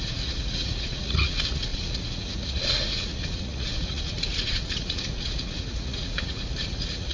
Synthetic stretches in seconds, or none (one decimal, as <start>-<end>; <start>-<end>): 0.0-7.1